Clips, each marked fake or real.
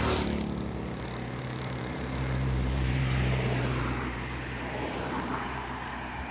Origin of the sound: fake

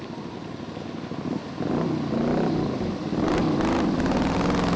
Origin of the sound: real